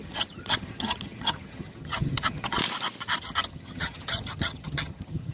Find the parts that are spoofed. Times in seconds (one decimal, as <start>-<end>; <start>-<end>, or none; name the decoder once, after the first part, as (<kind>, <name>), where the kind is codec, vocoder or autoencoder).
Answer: 0.0-2.6 (vocoder, HiFi-GAN); 3.2-5.3